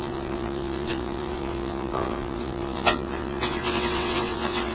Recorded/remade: remade